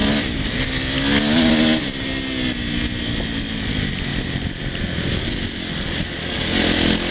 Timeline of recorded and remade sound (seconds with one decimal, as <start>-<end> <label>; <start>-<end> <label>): 0.0-4.1 recorded; 4.1-4.6 remade; 4.6-7.1 recorded